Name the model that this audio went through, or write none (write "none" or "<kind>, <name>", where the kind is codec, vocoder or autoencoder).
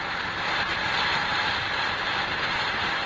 vocoder, BigVGAN v2